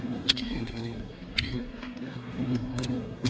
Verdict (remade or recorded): remade